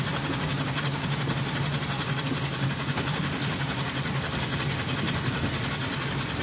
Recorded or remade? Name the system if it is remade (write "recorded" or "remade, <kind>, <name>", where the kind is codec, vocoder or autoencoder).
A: recorded